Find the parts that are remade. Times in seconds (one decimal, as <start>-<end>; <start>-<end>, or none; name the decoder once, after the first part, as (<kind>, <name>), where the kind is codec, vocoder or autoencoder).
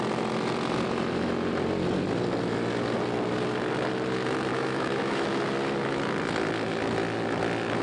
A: 4.5-5.4 (autoencoder, DAC-VAE)